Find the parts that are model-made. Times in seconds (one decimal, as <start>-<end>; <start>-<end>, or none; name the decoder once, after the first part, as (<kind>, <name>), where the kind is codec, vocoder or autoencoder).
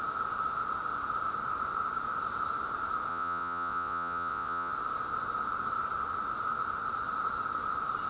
3.1-4.7 (vocoder, Vocos)